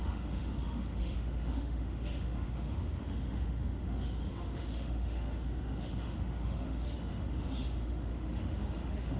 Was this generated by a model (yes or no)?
yes